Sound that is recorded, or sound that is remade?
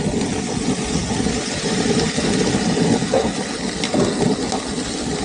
recorded